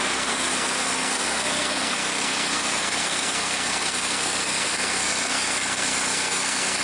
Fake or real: fake